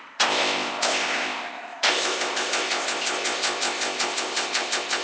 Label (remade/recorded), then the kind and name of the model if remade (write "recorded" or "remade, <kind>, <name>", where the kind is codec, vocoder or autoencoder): remade, codec, ZipCodec